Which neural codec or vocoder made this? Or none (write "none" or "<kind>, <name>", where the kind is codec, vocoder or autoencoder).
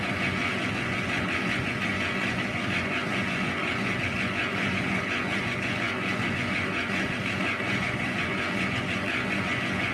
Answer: vocoder, Vocos